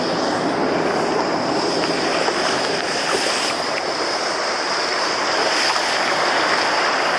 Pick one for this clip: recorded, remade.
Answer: recorded